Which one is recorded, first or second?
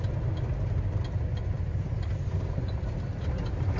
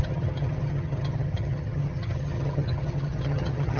first